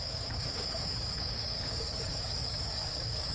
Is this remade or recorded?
remade